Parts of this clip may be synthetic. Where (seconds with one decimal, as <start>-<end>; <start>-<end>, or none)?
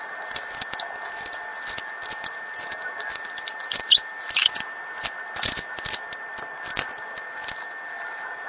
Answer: none